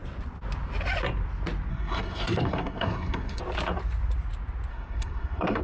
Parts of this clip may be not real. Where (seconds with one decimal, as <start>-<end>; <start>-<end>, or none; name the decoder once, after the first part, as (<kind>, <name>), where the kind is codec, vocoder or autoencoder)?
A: 1.7-3.4 (codec, SNAC); 4.7-5.6